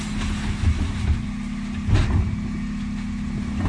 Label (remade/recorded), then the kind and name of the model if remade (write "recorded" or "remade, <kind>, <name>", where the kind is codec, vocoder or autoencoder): recorded